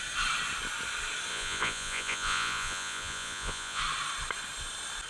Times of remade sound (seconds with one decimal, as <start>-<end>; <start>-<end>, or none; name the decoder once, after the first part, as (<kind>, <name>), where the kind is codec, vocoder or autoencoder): 1.3-3.8 (vocoder, Vocos)